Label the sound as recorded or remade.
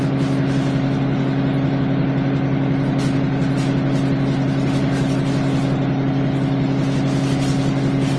recorded